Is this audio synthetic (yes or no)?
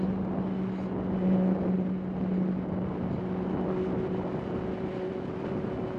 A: no